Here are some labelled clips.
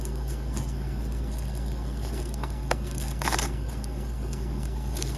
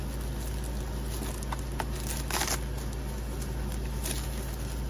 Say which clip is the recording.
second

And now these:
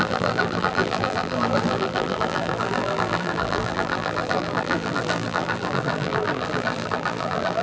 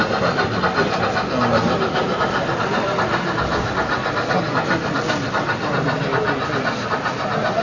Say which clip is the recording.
second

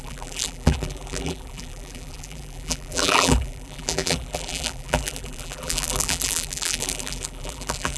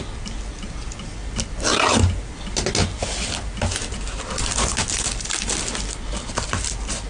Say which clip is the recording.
second